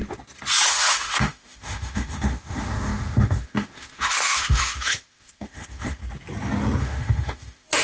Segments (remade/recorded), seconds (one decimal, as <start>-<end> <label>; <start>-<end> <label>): 0.0-0.7 recorded; 0.7-6.0 remade; 6.0-6.8 recorded; 6.8-7.8 remade

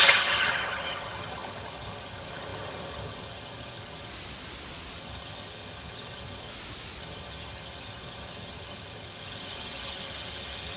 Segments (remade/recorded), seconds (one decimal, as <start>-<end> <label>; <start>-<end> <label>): 0.0-4.1 remade; 4.1-5.0 recorded; 5.0-6.5 remade; 6.5-7.0 recorded; 7.0-10.8 remade

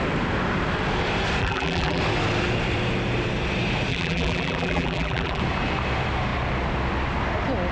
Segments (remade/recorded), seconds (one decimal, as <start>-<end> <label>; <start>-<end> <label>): 0.0-1.4 recorded; 1.4-2.0 remade; 2.0-3.9 recorded; 3.9-5.4 remade; 5.4-7.7 recorded

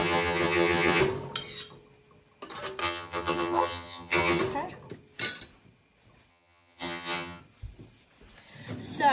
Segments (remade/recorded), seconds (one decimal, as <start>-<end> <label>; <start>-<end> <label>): 0.0-1.0 remade; 1.0-2.8 recorded; 2.8-4.4 remade; 4.4-6.3 recorded; 6.3-7.4 remade; 7.4-9.1 recorded

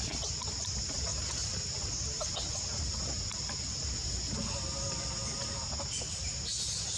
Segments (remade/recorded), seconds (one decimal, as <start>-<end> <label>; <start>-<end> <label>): 0.0-7.0 recorded

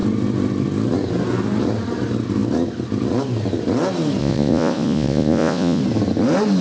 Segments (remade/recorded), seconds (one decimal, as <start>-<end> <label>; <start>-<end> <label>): 0.0-4.2 recorded; 4.2-5.8 remade; 5.8-6.6 recorded

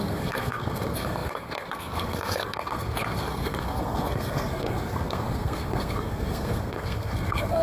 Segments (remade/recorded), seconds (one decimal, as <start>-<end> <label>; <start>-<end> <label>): 0.0-7.6 remade